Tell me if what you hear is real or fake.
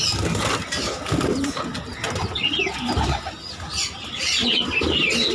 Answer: real